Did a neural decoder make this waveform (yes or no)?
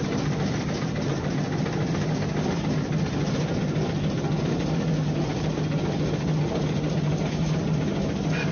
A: no